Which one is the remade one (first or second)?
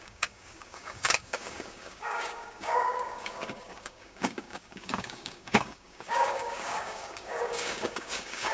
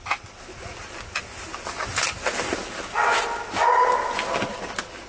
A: first